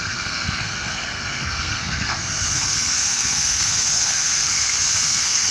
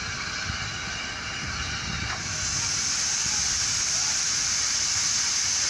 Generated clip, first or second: first